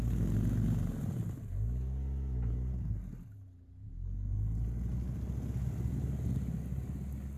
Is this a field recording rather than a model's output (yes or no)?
yes